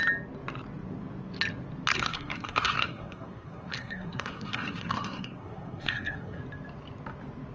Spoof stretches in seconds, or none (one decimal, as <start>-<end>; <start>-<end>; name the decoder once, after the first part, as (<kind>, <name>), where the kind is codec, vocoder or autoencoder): 1.9-6.4 (codec, SNAC)